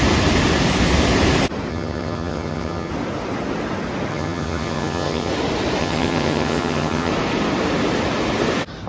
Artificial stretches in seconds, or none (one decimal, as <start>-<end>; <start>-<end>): 1.7-2.9; 4.1-5.3; 5.8-7.1